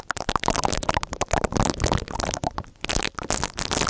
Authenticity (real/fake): fake